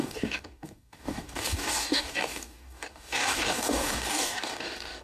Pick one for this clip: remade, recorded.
remade